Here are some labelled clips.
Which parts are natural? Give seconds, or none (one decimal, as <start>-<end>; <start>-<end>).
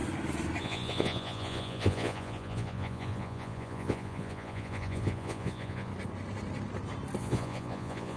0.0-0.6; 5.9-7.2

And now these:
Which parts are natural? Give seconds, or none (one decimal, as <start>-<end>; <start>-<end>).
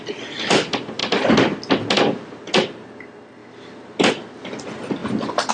0.0-5.5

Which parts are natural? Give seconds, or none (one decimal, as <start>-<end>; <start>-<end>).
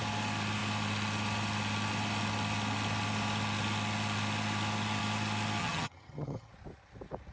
0.0-5.6; 6.5-7.3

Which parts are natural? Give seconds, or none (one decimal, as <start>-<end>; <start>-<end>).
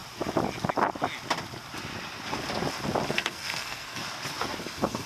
0.0-3.1; 4.0-4.6